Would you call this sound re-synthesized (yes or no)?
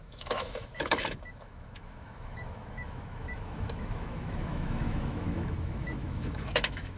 yes